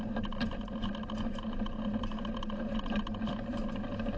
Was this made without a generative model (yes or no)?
yes